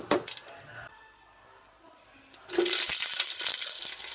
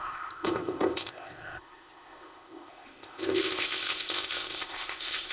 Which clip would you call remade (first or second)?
second